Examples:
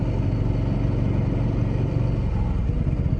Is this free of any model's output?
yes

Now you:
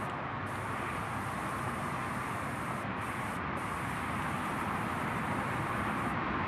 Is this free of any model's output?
yes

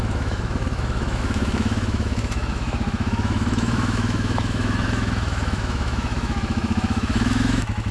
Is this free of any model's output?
no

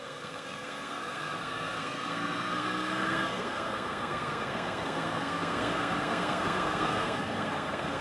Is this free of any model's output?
no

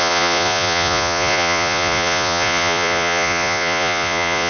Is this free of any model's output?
no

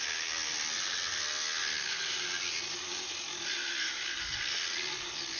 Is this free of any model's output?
yes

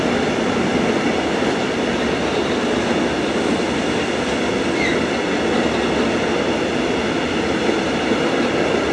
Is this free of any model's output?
yes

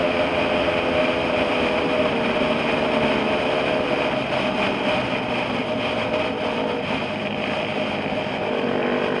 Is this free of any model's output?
yes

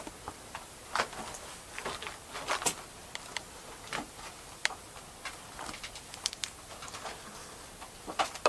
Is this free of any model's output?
yes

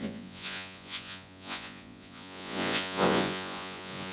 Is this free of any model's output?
no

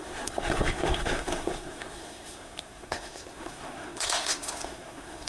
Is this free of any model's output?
no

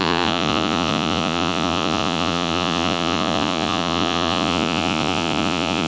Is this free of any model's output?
no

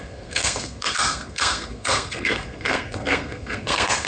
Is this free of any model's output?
no